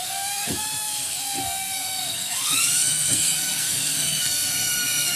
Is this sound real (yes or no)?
no